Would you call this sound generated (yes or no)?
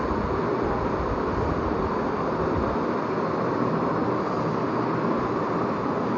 no